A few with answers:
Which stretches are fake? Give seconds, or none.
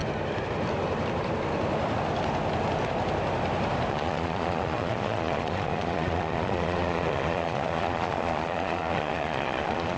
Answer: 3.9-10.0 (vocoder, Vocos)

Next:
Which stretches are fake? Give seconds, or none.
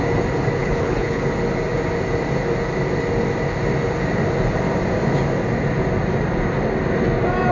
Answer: 0.6-1.2 (codec, HILCodec)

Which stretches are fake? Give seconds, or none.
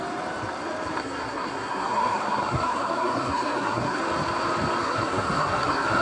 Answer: 1.0-4.0 (codec, SNAC); 4.8-6.0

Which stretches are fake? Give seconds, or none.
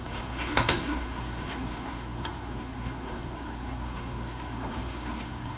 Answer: 0.0-5.6 (codec, SNAC)